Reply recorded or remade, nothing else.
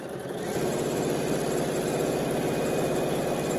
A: recorded